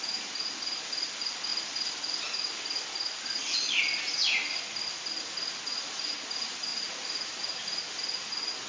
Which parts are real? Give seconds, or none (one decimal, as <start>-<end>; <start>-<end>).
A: 0.0-6.7; 7.4-8.7